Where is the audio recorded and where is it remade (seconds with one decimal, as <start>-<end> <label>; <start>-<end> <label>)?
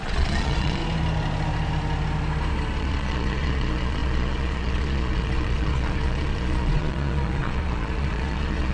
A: 0.0-0.8 remade; 0.8-2.8 recorded; 2.8-8.7 remade